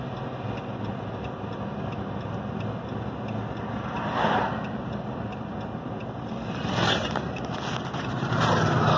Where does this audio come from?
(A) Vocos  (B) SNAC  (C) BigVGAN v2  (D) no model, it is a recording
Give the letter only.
D